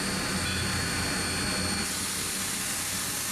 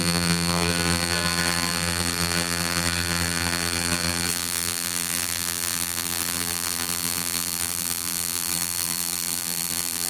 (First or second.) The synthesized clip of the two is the second